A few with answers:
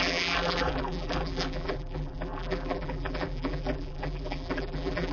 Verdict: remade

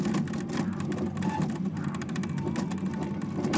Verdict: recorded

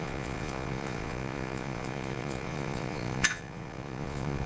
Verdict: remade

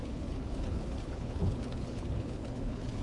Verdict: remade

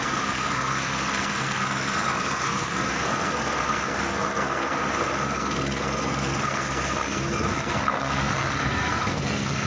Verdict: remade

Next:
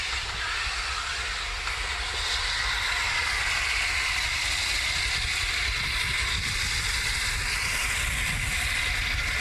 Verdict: recorded